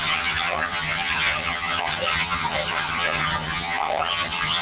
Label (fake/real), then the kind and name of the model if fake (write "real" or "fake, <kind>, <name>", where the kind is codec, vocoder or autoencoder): fake, vocoder, HiFi-GAN